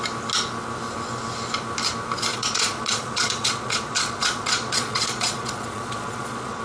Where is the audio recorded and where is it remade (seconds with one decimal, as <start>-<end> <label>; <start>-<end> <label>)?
0.0-2.3 recorded; 2.3-6.6 remade